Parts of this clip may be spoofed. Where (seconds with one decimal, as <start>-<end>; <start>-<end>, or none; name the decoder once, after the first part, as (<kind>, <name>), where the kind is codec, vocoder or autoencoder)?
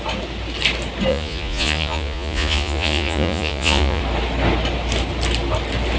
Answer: 1.1-4.0 (vocoder, Vocos)